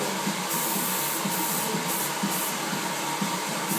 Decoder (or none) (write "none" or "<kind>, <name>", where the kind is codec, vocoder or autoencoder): none